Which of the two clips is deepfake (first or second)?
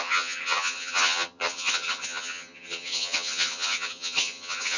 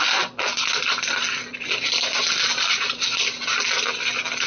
first